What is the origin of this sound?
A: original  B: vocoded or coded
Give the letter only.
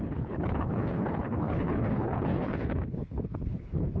B